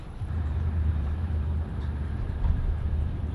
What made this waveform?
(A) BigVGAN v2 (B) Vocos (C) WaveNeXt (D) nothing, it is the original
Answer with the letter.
A